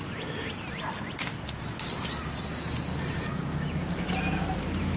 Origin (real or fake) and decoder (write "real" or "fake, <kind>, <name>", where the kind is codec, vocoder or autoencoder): real